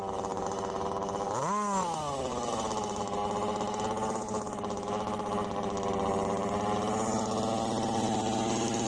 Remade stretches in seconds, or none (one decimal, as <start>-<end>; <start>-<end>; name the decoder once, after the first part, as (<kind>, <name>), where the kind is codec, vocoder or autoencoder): 2.3-3.0 (vocoder, BigVGAN v2)